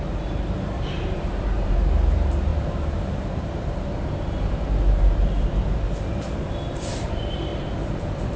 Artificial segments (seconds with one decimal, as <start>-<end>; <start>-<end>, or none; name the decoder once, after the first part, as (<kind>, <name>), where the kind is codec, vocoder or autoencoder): 0.0-8.4 (vocoder, BigVGAN v2)